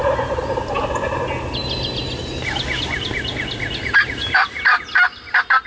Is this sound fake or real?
real